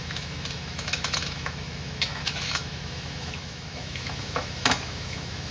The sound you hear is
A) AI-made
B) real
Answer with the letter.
A